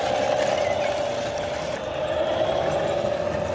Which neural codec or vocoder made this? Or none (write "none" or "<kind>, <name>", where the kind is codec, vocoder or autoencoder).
none